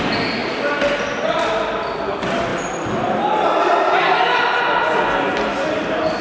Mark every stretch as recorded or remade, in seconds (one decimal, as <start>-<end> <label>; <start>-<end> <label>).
0.0-6.2 recorded